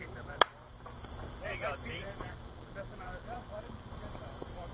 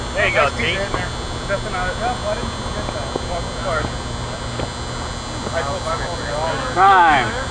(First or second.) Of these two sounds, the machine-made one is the first